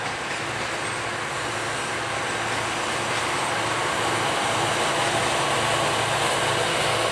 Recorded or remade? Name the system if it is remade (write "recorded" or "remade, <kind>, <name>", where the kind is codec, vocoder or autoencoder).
recorded